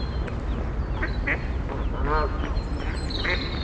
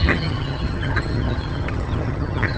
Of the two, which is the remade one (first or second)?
second